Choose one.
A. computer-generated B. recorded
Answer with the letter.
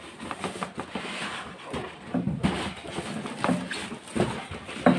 B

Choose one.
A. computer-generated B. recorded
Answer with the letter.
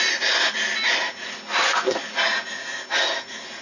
B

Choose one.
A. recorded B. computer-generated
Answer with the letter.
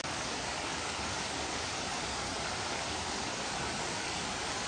B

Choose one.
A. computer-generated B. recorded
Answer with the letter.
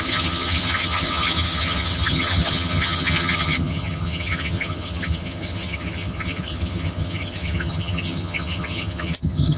A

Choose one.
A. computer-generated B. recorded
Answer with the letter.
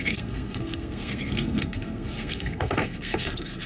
A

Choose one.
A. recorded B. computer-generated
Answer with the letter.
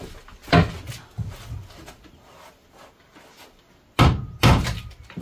A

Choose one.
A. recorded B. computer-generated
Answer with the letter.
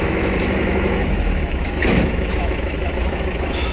B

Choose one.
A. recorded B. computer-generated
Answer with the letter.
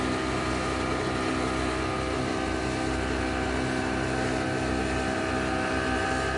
A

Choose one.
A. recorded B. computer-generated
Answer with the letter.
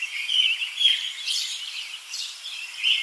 B